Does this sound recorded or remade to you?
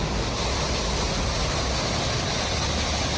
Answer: recorded